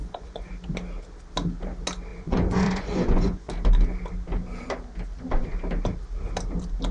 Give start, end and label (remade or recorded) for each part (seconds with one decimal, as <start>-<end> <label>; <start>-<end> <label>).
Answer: 0.0-0.5 remade; 0.5-2.1 recorded; 2.1-3.5 remade; 3.5-6.9 recorded